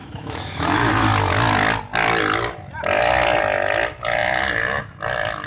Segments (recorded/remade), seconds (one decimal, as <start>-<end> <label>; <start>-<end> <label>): 0.0-0.9 remade; 0.9-5.5 recorded